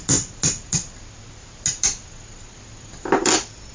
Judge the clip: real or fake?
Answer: real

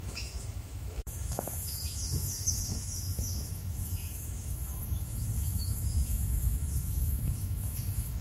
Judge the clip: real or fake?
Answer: fake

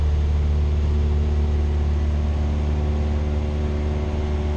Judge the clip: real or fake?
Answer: real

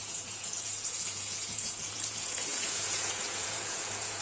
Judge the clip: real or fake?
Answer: fake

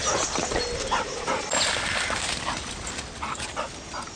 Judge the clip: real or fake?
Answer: real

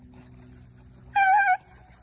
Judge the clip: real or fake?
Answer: real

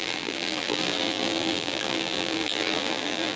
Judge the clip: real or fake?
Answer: fake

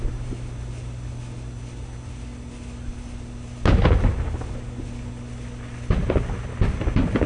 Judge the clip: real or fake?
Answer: real